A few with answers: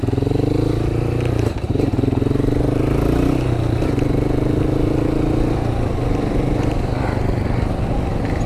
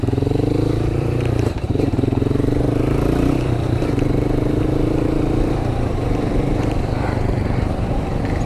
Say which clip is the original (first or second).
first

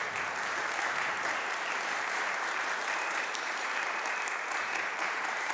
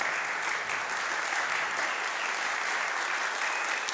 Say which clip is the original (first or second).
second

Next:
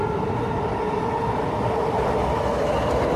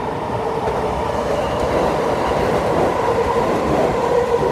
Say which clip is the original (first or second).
first